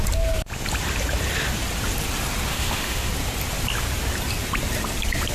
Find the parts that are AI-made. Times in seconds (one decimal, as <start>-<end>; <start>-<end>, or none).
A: 2.5-3.1